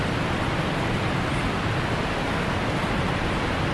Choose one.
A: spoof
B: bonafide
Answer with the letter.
B